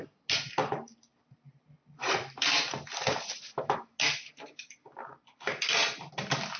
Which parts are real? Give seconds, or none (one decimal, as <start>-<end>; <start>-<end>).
0.0-0.6; 3.6-6.6